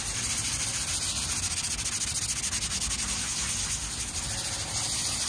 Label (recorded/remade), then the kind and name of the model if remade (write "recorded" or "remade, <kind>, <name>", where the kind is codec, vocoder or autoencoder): recorded